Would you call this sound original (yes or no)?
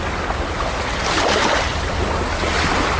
yes